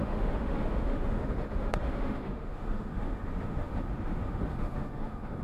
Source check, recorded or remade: remade